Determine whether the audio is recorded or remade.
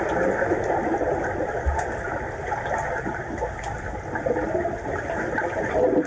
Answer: recorded